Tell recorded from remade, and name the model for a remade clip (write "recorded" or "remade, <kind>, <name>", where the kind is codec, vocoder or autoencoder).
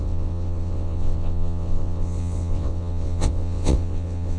remade, vocoder, WaveNeXt